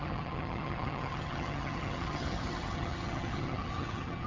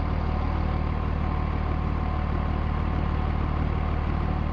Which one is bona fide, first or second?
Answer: second